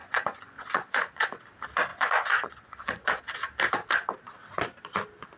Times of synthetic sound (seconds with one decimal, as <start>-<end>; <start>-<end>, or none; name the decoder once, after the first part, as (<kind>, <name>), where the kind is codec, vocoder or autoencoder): 0.0-1.4 (vocoder, Vocos); 1.9-3.2